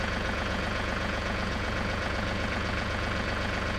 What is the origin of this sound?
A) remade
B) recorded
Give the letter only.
A